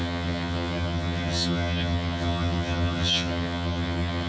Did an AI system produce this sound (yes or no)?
yes